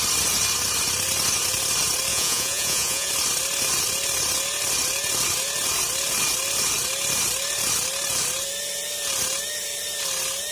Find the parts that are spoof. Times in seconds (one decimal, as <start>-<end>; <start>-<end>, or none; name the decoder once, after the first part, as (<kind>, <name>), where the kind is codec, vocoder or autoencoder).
2.1-3.1 (vocoder, Vocos)